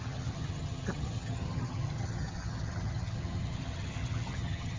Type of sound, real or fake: fake